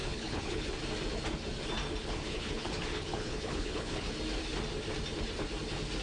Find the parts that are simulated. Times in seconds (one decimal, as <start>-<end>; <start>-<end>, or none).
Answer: 0.0-0.7; 2.0-4.1